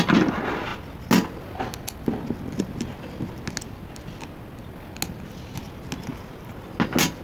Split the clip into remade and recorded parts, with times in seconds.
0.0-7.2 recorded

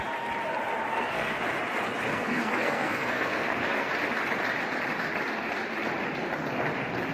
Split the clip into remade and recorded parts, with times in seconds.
0.0-0.9 recorded; 0.9-1.4 remade; 1.4-2.1 recorded; 2.1-3.9 remade; 3.9-7.1 recorded

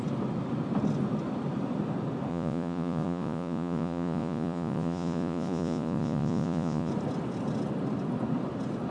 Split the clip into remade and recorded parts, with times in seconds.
0.0-2.3 recorded; 2.3-6.9 remade; 6.9-8.9 recorded